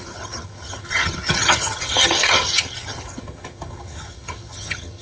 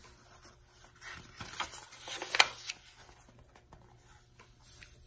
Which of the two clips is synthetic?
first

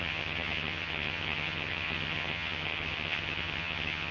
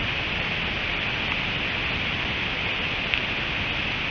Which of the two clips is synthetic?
first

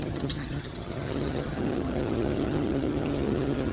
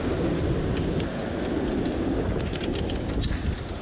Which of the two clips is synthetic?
first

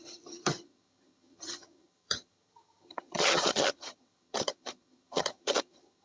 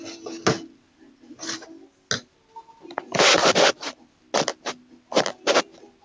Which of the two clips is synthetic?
first